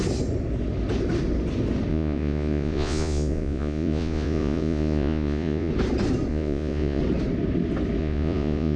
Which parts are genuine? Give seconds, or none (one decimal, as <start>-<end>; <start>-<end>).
0.0-1.9; 5.7-6.3; 7.0-8.0